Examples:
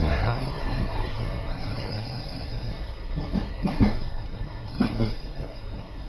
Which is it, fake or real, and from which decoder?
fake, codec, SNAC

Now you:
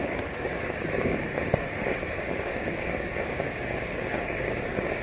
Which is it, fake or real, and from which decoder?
fake, codec, DAC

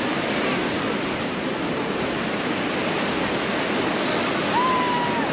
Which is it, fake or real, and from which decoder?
real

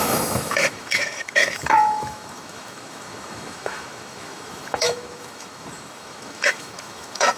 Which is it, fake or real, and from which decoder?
fake, autoencoder, DAC-VAE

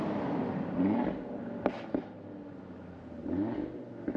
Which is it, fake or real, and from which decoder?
real